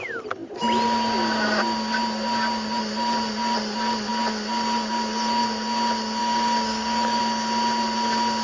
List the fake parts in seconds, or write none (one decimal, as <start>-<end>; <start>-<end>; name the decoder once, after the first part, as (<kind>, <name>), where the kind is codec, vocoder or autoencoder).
6.2-7.2 (codec, DAC)